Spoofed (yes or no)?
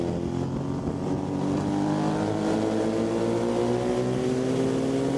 no